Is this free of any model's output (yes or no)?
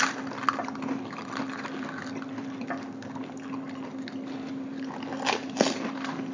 yes